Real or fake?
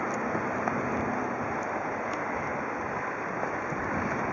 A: real